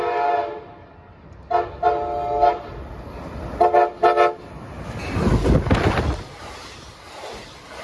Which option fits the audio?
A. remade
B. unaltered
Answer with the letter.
B